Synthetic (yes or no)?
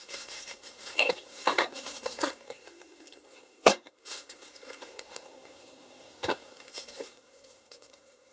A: yes